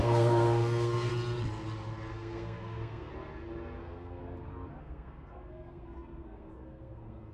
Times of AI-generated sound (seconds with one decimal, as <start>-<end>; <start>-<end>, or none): 0.0-1.1; 2.1-3.1; 3.8-4.2; 4.8-7.3